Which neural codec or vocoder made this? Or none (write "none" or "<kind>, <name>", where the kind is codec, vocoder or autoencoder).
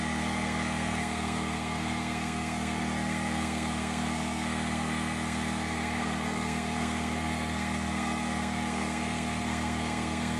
codec, SNAC